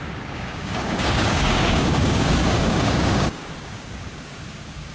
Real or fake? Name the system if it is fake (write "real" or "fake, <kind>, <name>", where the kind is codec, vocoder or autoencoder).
fake, codec, DAC